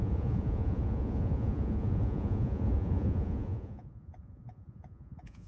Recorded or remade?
remade